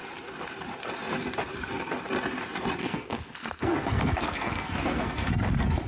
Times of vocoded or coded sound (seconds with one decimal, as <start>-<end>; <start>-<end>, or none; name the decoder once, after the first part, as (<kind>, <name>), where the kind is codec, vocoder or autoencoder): 2.8-5.3 (codec, SNAC)